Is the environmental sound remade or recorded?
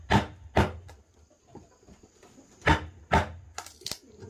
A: recorded